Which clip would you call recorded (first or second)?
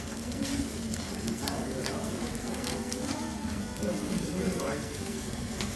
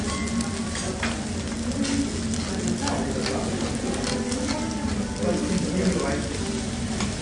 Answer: second